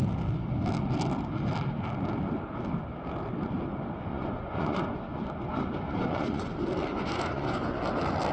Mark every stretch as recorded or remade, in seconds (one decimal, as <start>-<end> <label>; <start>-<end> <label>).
0.0-4.1 recorded; 4.1-6.5 remade; 6.5-6.9 recorded; 6.9-7.8 remade; 7.8-8.3 recorded